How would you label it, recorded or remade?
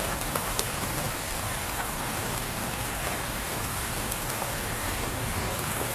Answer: remade